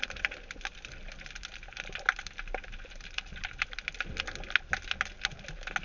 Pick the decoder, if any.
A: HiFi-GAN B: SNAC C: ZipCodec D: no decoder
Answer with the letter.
D